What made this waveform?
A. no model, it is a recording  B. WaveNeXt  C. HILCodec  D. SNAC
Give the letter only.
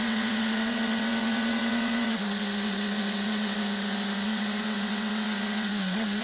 B